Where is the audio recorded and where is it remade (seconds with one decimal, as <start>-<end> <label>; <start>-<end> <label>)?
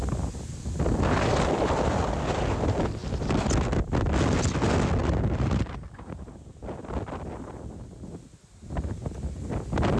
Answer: 0.0-5.0 recorded; 5.0-6.3 remade; 6.3-10.0 recorded